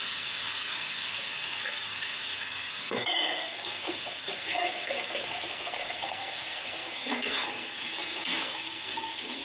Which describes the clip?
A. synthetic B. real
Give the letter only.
A